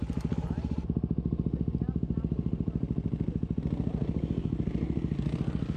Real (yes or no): yes